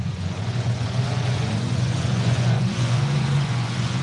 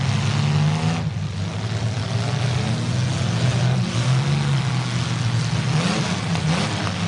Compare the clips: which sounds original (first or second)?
second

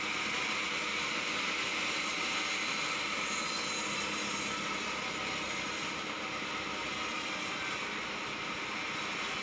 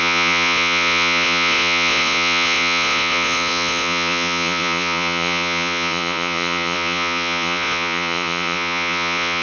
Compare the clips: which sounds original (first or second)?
first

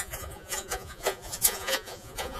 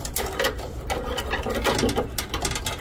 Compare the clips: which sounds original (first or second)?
second